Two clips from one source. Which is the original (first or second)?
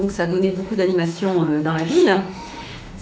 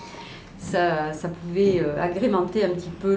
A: second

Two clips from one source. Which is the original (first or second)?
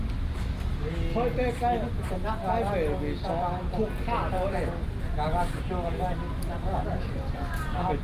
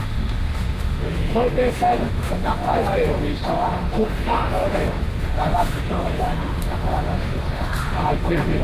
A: first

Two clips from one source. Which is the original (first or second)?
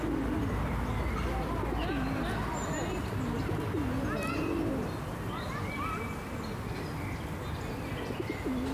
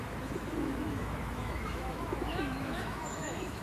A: first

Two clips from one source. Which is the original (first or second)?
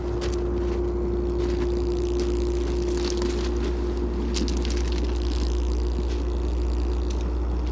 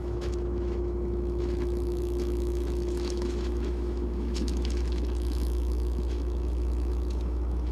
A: first